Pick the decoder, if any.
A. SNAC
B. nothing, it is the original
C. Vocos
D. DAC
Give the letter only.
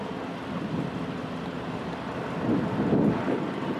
B